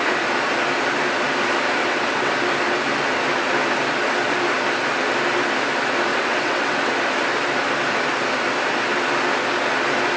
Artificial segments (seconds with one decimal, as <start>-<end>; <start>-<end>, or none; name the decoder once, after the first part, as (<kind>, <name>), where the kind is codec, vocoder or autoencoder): 1.8-2.3 (vocoder, WaveNeXt); 6.1-6.9